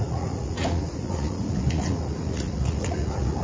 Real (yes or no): no